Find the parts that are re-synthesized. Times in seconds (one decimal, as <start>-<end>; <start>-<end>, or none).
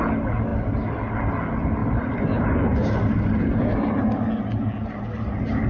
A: 1.8-4.0